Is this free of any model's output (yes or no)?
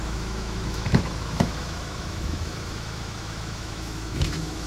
no